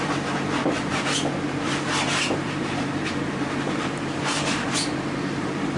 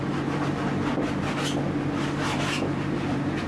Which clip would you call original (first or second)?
second